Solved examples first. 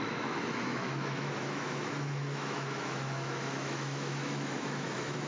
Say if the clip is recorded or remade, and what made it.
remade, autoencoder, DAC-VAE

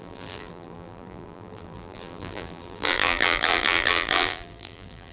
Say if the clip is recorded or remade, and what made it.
remade, vocoder, BigVGAN v2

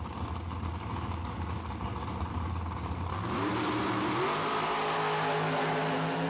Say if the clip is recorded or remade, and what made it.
recorded